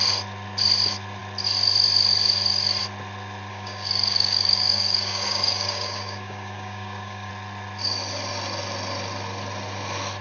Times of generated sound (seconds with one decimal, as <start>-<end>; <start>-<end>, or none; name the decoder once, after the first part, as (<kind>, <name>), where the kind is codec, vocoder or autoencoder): 3.5-7.3 (codec, DAC)

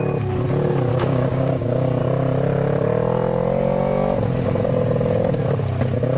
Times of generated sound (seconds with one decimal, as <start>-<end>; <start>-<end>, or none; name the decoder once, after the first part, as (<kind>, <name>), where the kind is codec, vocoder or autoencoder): 0.9-2.0 (codec, DAC)

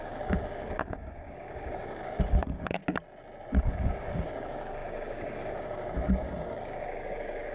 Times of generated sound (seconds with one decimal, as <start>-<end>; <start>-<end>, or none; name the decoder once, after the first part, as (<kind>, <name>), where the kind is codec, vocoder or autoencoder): 0.0-2.8 (codec, DAC); 3.5-7.5